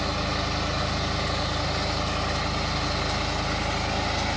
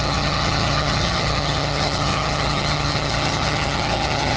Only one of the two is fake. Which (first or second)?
second